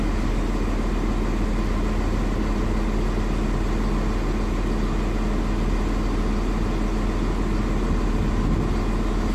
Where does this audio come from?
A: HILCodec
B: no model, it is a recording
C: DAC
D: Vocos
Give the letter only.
B